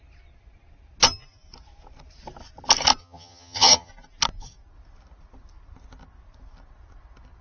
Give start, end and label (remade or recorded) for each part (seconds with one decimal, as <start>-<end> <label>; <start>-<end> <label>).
0.0-3.0 recorded; 3.0-3.9 remade; 3.9-7.4 recorded